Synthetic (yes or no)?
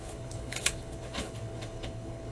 yes